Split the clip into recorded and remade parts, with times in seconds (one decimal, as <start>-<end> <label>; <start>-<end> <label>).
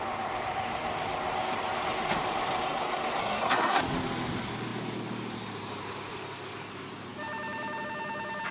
0.0-3.2 recorded; 3.2-3.8 remade; 3.8-8.5 recorded